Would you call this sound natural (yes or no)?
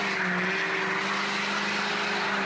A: yes